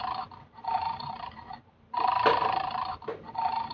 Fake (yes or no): yes